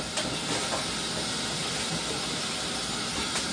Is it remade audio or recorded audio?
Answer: recorded